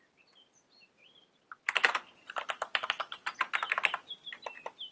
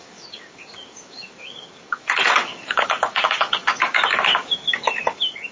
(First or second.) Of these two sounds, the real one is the first